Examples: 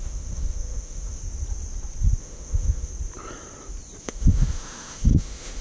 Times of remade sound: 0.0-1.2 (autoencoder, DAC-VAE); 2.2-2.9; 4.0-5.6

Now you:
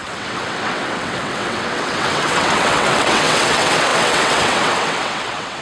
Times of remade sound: 0.0-5.6 (vocoder, WaveNeXt)

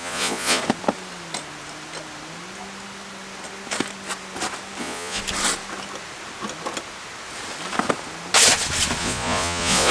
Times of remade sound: 0.0-0.6 (vocoder, Vocos); 4.8-5.2; 9.0-9.9

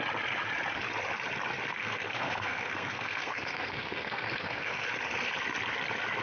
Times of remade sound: 1.7-4.9 (codec, SNAC)

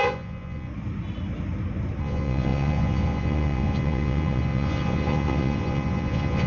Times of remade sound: 0.0-0.7 (vocoder, Vocos); 2.0-6.5